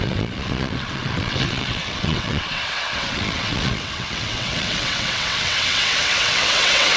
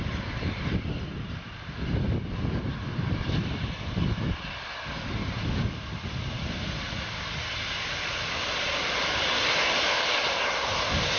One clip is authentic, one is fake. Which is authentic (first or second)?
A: second